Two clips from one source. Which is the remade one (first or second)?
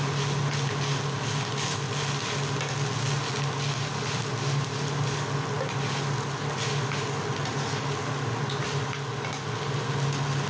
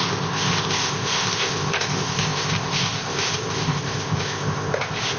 second